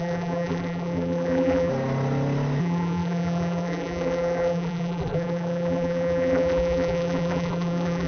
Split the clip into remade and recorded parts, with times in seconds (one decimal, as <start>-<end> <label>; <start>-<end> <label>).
0.0-1.7 remade; 1.7-2.6 recorded; 2.6-8.1 remade